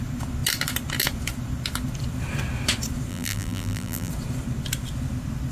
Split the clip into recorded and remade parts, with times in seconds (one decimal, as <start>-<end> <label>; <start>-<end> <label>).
0.0-3.1 recorded; 3.1-4.1 remade; 4.1-5.5 recorded